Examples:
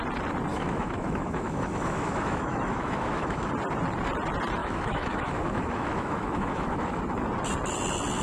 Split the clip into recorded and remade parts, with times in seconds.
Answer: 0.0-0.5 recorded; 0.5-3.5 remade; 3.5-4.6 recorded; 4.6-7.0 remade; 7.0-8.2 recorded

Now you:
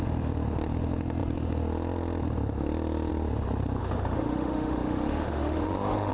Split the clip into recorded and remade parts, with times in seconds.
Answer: 0.0-3.8 recorded; 3.8-6.1 remade

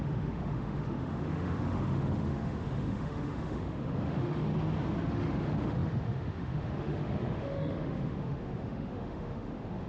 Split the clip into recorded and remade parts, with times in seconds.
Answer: 0.0-4.5 remade; 4.5-5.1 recorded; 5.1-9.9 remade